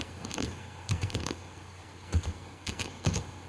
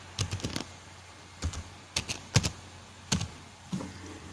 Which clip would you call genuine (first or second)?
second